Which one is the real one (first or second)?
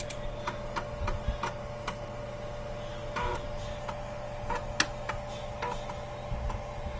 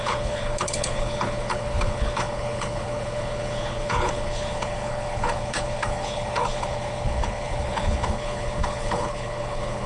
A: first